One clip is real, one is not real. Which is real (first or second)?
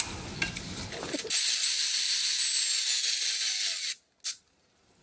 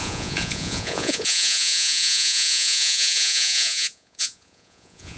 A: first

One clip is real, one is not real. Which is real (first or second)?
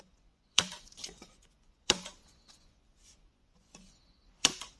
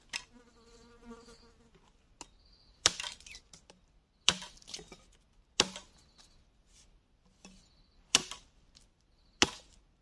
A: second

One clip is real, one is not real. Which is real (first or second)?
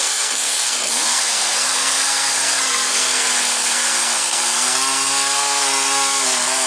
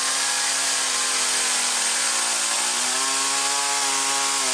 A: second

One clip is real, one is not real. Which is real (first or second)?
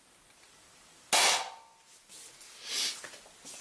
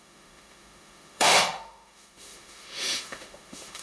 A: first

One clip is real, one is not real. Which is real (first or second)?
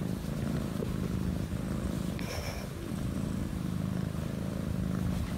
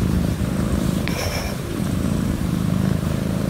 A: first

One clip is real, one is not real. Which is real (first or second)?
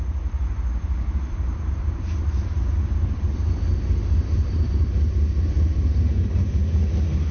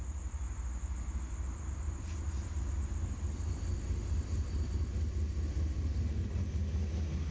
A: second